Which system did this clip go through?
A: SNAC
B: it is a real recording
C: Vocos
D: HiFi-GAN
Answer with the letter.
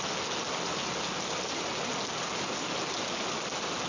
B